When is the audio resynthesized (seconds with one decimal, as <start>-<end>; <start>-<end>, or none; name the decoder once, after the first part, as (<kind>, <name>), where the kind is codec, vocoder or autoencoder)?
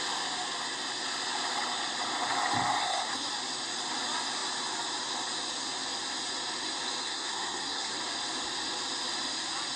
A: 2.8-3.3 (codec, SNAC); 7.0-7.9